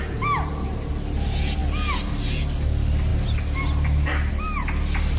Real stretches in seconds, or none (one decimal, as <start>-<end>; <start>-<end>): 0.0-5.2